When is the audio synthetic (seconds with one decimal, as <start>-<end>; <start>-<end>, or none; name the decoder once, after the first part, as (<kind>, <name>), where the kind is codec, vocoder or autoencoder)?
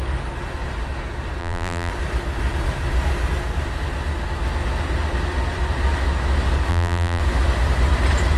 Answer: 1.4-1.9 (vocoder, BigVGAN v2); 6.7-7.2